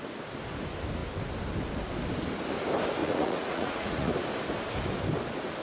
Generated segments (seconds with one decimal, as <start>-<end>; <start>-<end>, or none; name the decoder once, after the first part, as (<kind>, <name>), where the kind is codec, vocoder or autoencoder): 3.0-4.1 (vocoder, Vocos)